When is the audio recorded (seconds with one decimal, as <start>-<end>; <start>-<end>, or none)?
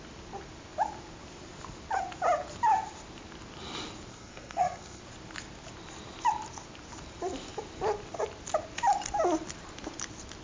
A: 0.0-4.1; 5.0-10.4